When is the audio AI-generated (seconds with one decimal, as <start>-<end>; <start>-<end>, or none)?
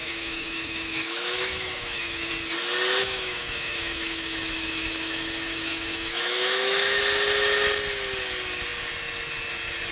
0.0-2.3; 3.0-7.0